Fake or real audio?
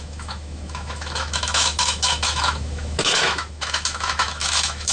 fake